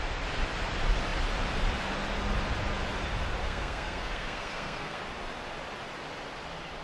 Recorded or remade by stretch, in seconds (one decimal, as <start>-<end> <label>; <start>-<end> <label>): 0.0-3.4 recorded; 3.4-5.0 remade; 5.0-6.8 recorded